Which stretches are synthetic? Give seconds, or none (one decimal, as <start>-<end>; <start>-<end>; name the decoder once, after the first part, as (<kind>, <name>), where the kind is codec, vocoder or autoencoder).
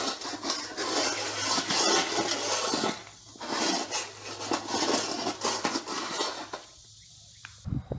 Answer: none